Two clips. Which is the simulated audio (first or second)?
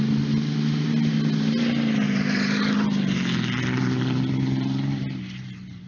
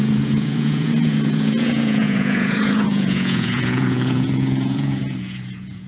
second